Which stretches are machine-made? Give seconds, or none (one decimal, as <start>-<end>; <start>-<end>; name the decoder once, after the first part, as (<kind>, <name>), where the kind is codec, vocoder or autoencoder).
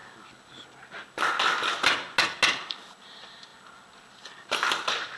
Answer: none